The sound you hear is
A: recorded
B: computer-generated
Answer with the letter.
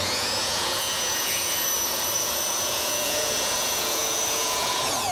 B